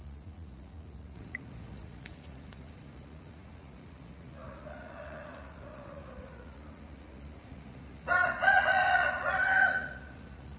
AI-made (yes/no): yes